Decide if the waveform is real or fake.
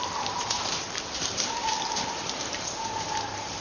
fake